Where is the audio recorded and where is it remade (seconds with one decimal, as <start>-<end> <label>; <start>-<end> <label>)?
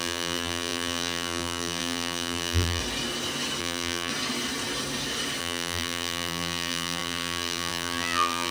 0.0-2.8 remade; 2.8-3.6 recorded; 3.6-4.1 remade; 4.1-5.4 recorded; 5.4-8.5 remade